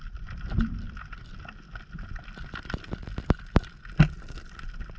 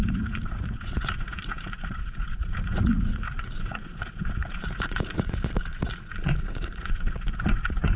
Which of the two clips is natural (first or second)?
first